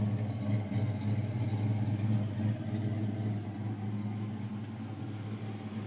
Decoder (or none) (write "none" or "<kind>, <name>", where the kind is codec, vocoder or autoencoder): none